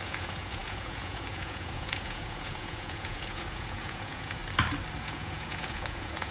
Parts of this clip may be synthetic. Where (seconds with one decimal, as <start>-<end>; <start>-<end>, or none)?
0.0-4.4; 5.0-6.3